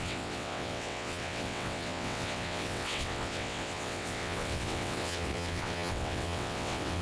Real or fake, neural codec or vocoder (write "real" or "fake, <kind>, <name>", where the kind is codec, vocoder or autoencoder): fake, vocoder, WaveNeXt